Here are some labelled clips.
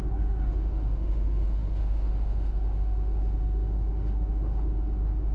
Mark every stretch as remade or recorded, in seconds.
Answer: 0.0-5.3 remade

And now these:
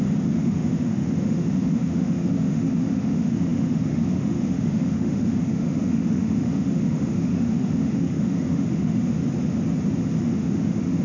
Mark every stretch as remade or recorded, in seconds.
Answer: 0.0-9.2 remade; 9.2-10.2 recorded; 10.2-11.0 remade

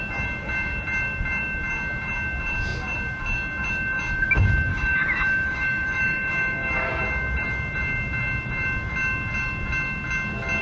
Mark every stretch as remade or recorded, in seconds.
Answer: 0.0-4.7 recorded; 4.7-6.9 remade; 6.9-10.6 recorded

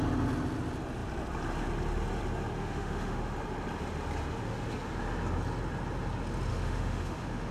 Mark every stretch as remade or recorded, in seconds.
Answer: 0.0-2.6 recorded; 2.6-3.2 remade; 3.2-6.5 recorded; 6.5-7.5 remade

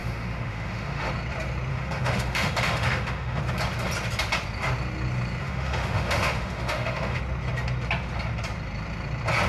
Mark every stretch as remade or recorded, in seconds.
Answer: 0.0-1.1 remade; 1.1-1.7 recorded; 1.7-3.4 remade; 3.4-5.4 recorded; 5.4-7.2 remade; 7.2-9.5 recorded

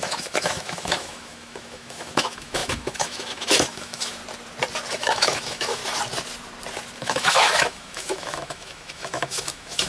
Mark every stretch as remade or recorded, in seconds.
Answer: 0.0-4.2 remade; 4.2-4.9 recorded; 4.9-5.8 remade; 5.8-7.0 recorded; 7.0-9.9 remade

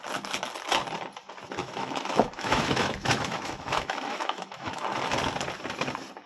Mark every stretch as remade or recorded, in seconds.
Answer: 0.0-1.6 recorded; 1.6-4.8 remade; 4.8-6.3 recorded

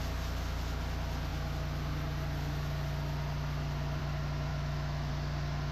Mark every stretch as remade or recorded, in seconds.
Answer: 0.0-4.5 recorded; 4.5-5.1 remade; 5.1-5.7 recorded